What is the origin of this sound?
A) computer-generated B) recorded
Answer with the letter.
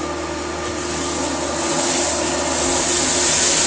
B